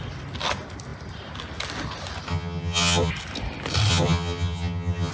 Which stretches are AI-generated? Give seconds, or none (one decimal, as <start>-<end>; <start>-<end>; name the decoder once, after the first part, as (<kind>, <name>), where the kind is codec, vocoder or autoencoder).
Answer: 2.3-3.1 (vocoder, HiFi-GAN); 3.9-5.1